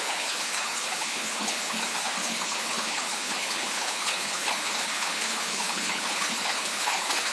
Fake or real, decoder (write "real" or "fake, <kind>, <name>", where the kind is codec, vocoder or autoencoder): fake, codec, HILCodec